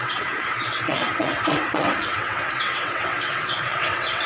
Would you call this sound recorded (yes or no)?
no